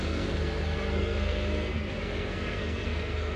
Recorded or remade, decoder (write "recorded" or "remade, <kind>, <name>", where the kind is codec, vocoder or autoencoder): remade, codec, SNAC